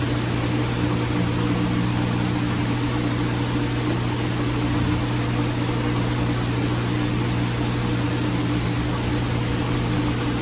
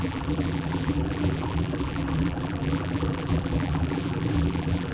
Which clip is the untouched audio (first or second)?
first